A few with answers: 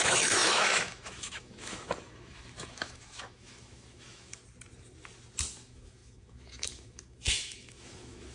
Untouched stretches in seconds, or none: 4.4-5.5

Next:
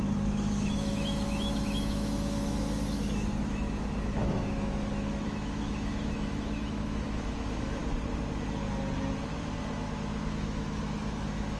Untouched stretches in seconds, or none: 7.8-10.3

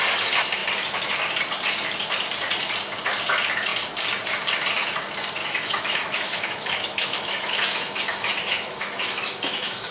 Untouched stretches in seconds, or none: 0.0-5.4

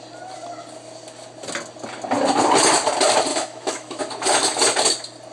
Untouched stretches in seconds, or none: 0.0-3.3; 4.0-5.3